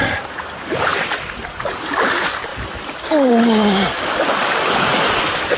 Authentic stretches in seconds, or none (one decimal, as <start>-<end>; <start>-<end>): 2.5-3.3